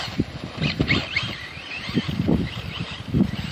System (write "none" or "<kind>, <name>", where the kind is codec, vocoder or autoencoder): vocoder, BigVGAN v2